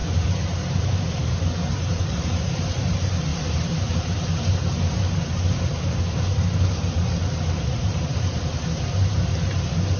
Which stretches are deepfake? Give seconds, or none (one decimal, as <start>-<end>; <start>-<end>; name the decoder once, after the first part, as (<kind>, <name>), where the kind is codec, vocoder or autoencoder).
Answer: 0.0-9.3 (vocoder, BigVGAN v2)